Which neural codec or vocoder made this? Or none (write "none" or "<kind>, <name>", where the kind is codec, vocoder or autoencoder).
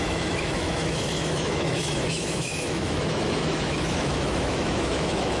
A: autoencoder, DAC-VAE